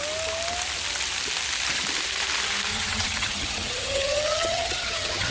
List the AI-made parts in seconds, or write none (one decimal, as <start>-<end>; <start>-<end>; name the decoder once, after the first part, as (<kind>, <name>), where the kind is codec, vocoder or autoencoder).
2.7-5.3 (vocoder, HiFi-GAN)